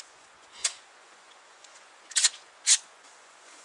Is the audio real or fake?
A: fake